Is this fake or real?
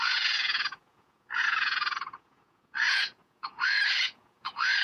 fake